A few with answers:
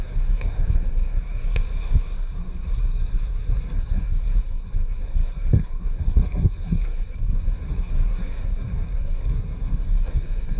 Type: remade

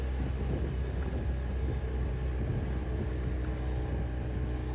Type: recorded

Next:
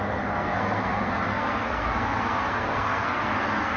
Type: remade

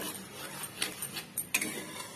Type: recorded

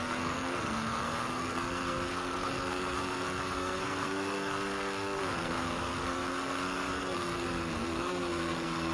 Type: remade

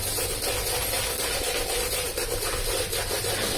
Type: recorded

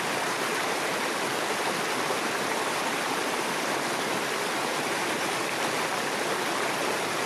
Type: recorded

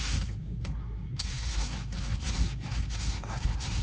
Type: remade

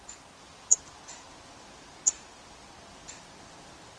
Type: recorded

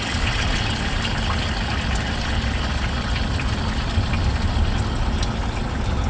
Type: recorded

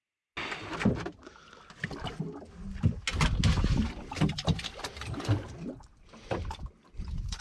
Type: recorded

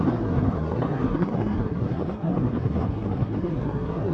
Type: remade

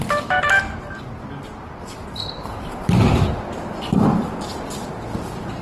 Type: recorded